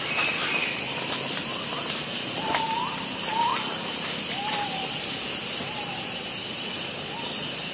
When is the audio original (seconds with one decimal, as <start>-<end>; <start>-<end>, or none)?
0.0-7.7